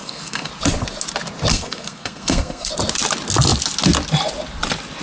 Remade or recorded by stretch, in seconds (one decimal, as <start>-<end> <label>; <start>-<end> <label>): 0.0-0.5 remade; 0.5-1.5 recorded; 1.5-2.7 remade; 2.7-5.0 recorded